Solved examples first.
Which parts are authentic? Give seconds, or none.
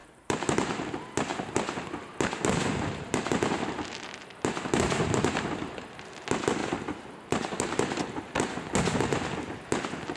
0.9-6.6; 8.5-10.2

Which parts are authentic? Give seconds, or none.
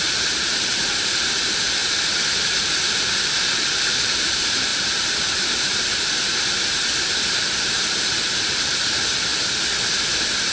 9.3-10.0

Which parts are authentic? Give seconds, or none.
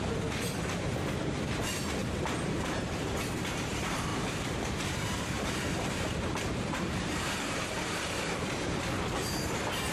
0.0-2.0; 3.3-4.1; 8.8-9.9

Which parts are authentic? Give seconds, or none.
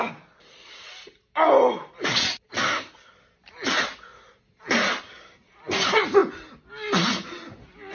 0.0-7.9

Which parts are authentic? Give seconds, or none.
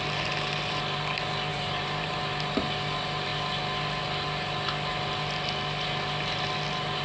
0.0-1.5; 2.2-7.0